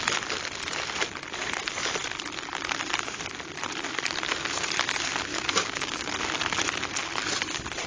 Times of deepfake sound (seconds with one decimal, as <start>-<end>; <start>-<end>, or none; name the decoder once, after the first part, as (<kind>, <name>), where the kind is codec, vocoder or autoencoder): 5.3-6.1 (codec, DAC)